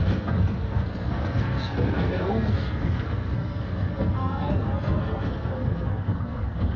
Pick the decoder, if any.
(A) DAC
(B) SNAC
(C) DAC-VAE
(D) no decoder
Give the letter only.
B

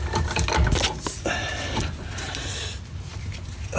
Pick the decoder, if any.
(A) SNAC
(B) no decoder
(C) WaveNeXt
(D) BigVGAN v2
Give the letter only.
B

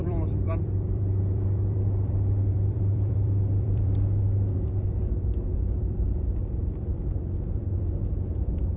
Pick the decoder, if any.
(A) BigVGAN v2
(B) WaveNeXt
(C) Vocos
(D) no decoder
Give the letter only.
A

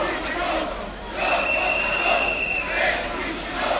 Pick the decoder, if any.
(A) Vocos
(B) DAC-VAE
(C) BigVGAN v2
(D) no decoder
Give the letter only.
C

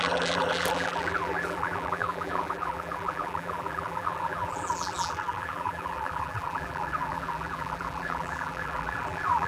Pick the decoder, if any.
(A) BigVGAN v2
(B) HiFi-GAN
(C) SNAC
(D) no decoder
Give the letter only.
A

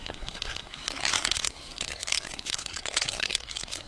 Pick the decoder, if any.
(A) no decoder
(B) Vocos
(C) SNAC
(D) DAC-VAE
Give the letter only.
C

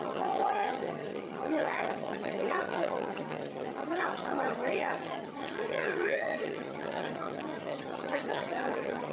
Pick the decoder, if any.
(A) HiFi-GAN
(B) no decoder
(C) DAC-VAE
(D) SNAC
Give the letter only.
A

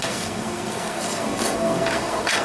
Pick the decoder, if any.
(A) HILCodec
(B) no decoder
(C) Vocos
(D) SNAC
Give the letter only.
D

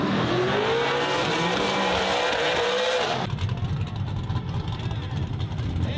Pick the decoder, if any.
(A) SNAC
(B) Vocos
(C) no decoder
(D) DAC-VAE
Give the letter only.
C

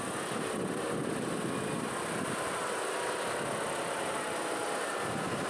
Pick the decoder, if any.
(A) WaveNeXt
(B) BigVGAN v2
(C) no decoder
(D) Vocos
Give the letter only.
C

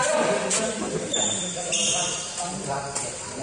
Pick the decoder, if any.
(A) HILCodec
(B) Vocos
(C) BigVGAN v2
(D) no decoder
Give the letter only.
C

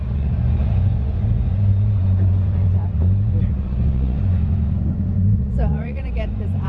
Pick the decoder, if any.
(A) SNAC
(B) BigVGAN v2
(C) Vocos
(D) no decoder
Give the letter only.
C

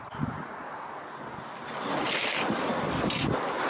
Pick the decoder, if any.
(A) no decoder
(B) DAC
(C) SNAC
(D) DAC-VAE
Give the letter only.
A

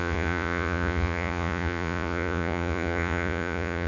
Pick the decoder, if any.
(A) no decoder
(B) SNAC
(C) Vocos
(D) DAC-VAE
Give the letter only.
C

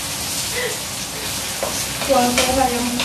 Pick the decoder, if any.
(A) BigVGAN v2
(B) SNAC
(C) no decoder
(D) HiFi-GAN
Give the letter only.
C